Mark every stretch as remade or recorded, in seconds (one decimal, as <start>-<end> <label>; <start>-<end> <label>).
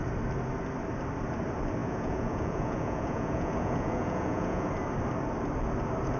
0.0-1.8 recorded; 1.8-4.7 remade; 4.7-6.2 recorded